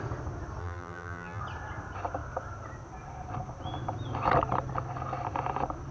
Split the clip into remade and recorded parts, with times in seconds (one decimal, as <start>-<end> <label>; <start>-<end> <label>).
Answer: 0.0-0.6 recorded; 0.6-1.4 remade; 1.4-5.9 recorded